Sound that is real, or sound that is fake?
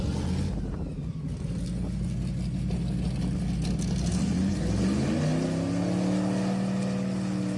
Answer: real